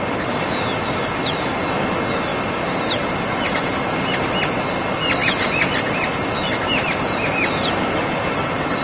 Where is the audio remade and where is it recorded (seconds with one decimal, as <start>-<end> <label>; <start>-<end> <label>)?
0.0-8.8 recorded